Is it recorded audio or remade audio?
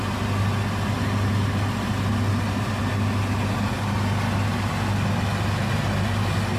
recorded